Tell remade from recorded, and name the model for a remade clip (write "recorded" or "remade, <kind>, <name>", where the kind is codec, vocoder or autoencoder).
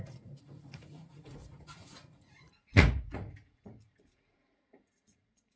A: remade, vocoder, Vocos